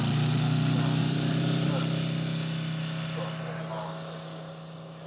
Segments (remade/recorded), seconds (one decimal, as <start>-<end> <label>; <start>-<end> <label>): 0.0-1.0 recorded; 1.0-1.7 remade; 1.7-5.1 recorded